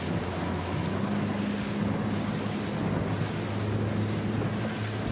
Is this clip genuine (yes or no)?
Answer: yes